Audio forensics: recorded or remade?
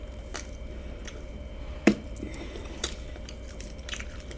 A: remade